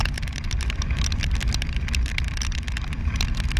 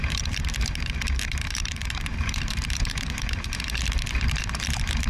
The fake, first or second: second